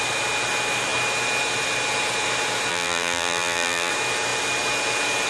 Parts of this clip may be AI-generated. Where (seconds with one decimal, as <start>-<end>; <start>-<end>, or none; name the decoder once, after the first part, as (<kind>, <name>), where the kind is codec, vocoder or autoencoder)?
2.7-3.9 (vocoder, BigVGAN v2)

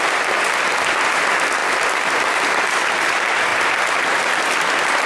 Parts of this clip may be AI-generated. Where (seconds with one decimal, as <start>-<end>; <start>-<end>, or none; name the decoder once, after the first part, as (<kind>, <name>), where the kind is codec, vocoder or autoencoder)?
3.5-4.3 (vocoder, BigVGAN v2)

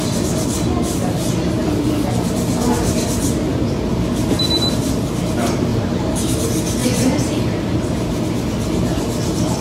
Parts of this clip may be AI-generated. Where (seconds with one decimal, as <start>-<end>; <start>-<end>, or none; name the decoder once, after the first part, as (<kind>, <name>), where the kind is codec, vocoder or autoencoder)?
3.5-4.9 (vocoder, BigVGAN v2); 5.7-6.3; 6.8-8.2

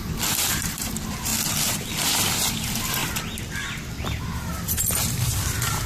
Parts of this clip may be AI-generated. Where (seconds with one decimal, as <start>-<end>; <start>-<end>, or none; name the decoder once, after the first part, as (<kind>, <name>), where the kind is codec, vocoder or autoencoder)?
0.0-1.3 (vocoder, BigVGAN v2); 2.3-3.0; 4.2-5.9

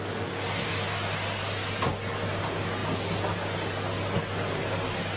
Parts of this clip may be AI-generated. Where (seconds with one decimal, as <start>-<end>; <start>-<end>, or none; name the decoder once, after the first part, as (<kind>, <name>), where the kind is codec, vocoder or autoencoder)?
none

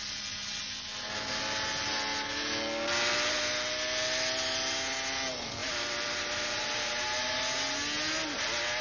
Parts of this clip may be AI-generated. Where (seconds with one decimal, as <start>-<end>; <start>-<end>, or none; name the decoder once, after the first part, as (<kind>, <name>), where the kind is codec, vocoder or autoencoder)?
5.6-6.9 (vocoder, BigVGAN v2)